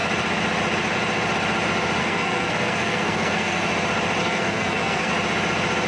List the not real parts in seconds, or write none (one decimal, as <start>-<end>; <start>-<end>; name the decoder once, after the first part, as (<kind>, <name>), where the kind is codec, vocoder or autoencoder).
2.0-3.6 (codec, SNAC); 4.2-5.1